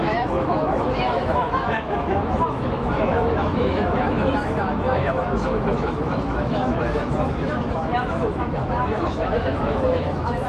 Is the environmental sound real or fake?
fake